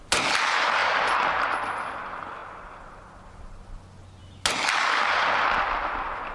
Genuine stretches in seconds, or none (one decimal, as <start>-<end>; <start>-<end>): 0.0-0.8; 1.9-6.3